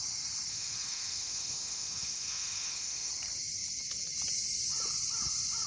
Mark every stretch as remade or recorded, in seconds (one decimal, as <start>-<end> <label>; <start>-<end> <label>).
0.0-0.5 recorded; 0.5-3.1 remade; 3.1-5.7 recorded